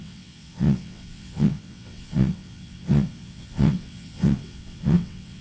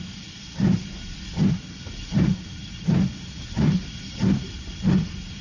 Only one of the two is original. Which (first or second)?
second